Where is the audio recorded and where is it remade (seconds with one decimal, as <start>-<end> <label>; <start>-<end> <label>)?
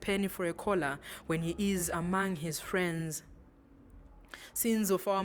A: 0.0-1.8 recorded; 1.8-2.5 remade; 2.5-5.2 recorded